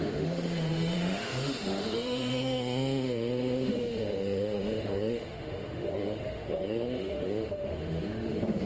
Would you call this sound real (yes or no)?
no